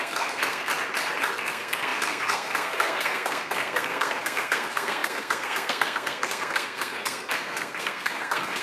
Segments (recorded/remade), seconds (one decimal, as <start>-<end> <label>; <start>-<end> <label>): 0.0-0.7 remade; 0.7-1.3 recorded; 1.3-8.6 remade